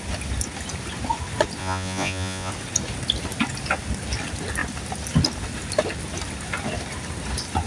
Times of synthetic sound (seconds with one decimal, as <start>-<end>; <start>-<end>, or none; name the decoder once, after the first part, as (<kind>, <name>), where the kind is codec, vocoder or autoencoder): 1.6-2.5 (vocoder, Vocos)